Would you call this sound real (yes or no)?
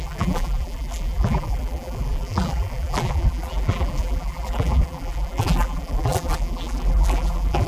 no